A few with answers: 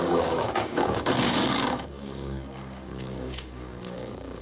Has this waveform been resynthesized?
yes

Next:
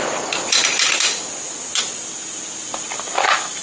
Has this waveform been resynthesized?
no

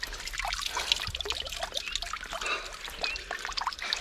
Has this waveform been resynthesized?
no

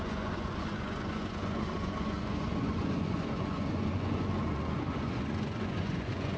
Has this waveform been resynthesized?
yes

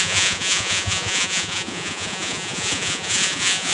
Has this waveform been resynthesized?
yes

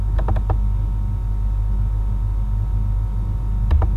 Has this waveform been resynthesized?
no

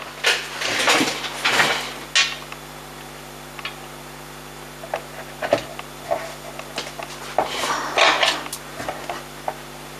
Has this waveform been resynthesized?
no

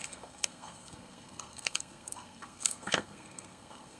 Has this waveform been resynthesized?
yes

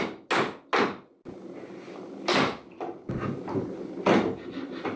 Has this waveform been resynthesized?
no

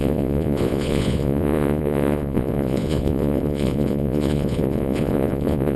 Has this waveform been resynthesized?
yes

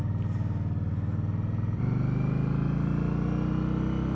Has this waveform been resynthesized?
no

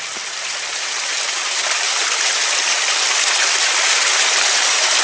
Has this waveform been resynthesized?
no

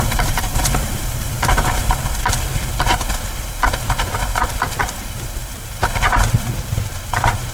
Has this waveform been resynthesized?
yes